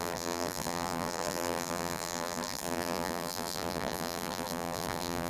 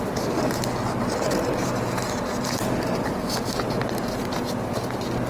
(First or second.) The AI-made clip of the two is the first